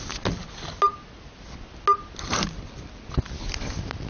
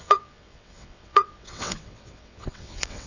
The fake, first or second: second